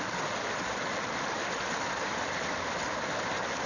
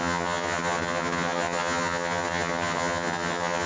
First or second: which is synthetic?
second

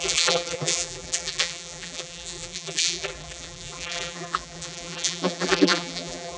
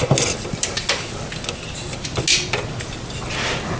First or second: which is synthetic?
first